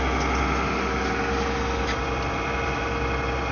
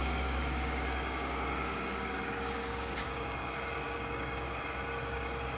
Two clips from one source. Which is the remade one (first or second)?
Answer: second